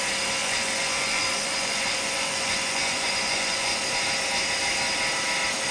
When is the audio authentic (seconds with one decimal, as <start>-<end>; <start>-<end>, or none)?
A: 0.0-0.4; 3.8-5.7